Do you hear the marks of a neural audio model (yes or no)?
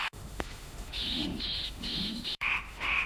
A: yes